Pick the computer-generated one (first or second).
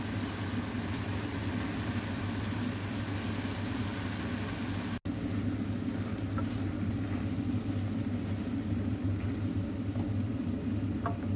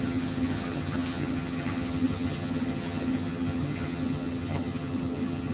second